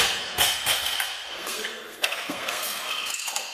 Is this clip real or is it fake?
fake